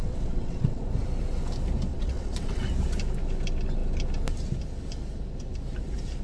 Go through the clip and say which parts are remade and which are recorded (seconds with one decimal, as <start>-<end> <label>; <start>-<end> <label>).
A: 0.0-0.8 remade; 0.8-1.9 recorded; 1.9-2.6 remade; 2.6-6.2 recorded